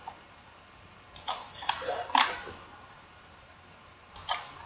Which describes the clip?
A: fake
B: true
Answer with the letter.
A